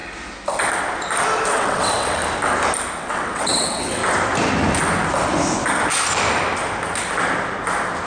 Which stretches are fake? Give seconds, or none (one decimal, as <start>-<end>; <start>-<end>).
1.5-2.2; 3.0-4.0